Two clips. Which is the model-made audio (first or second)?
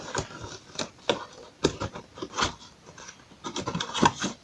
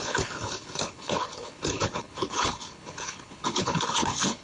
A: second